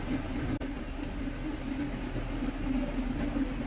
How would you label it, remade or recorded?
recorded